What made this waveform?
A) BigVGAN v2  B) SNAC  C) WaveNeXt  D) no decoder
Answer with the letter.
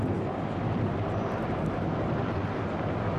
D